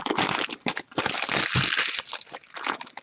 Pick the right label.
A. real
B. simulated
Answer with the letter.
A